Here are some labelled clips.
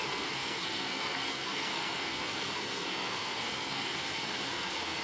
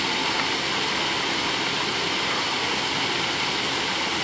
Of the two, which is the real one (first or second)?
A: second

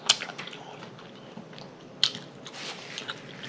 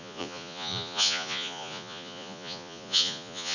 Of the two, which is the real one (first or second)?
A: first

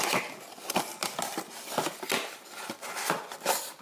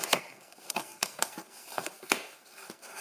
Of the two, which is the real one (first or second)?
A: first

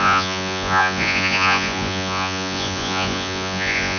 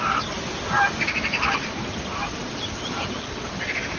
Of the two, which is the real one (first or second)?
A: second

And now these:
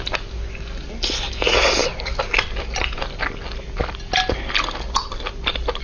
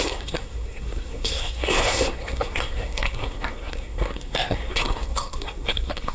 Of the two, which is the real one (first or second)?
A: first